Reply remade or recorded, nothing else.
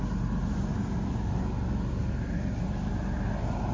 recorded